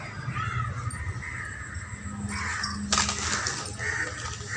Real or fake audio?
real